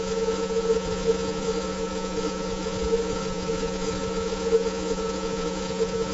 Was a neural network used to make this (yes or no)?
yes